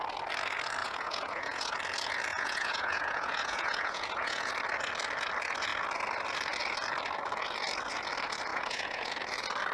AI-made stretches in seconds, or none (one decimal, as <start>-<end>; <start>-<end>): 0.8-1.7; 2.3-4.5; 8.5-9.1